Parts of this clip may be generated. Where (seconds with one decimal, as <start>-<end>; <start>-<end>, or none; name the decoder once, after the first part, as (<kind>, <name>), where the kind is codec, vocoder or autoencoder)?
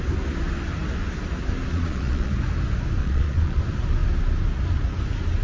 1.7-2.3 (vocoder, Vocos); 3.0-3.6